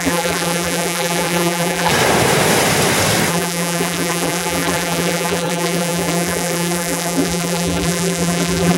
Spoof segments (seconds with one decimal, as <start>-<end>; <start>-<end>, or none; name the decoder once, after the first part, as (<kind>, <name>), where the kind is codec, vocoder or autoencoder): 0.0-1.9 (vocoder, BigVGAN v2); 3.3-8.8